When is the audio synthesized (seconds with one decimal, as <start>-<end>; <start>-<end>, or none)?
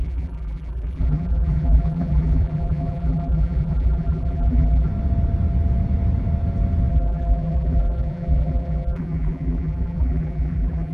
0.0-4.9; 6.9-10.9